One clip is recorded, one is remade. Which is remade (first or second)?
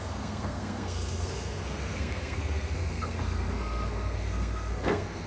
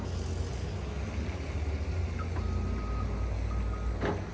first